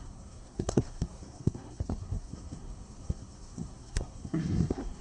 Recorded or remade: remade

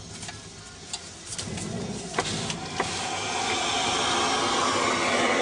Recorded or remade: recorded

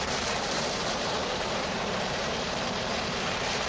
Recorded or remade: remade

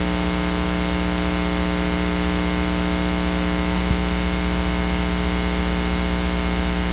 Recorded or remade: recorded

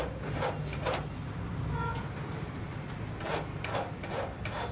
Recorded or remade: recorded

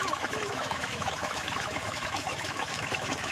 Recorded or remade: remade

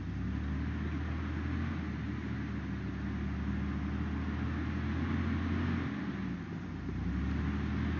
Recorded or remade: recorded